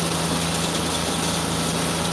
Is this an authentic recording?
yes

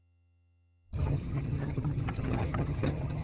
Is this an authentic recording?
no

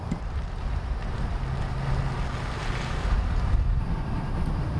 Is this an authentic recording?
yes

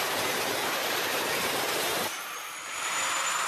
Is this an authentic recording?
yes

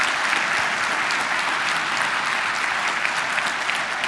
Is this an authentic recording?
yes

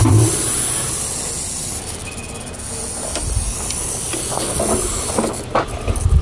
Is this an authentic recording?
yes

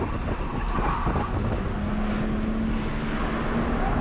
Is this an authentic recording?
yes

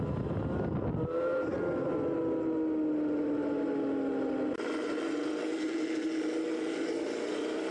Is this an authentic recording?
yes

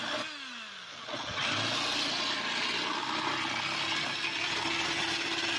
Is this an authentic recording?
yes